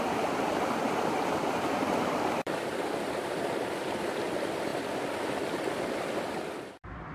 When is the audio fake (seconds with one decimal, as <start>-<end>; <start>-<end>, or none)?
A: 0.0-4.7; 5.8-7.1